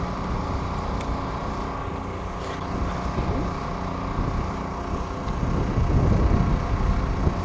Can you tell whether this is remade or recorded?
recorded